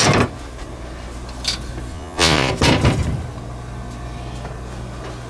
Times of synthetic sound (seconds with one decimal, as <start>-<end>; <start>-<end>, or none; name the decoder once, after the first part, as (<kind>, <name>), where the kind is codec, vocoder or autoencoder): 1.9-2.5 (vocoder, Vocos)